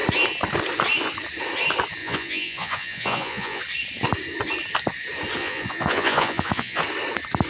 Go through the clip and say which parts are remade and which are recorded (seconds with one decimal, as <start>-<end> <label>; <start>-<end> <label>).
0.0-2.0 recorded; 2.0-3.6 remade; 3.6-5.4 recorded; 5.4-6.8 remade; 6.8-7.5 recorded